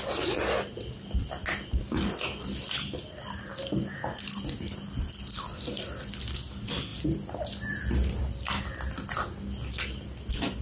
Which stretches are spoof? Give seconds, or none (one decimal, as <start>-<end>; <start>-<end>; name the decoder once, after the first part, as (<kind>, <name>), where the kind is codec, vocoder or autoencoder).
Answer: none